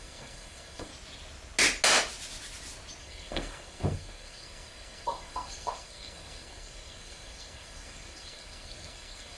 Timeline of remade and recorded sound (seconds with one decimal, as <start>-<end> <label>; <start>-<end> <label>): 0.0-0.9 remade; 0.9-3.0 recorded; 3.0-9.4 remade